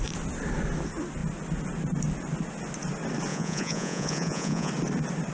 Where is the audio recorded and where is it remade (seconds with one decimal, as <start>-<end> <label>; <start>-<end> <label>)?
0.0-3.3 recorded; 3.3-4.7 remade; 4.7-5.3 recorded